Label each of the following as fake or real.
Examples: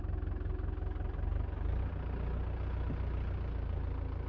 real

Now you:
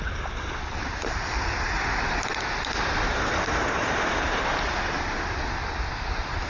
real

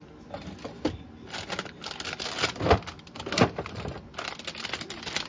real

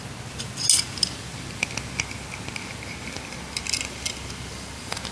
real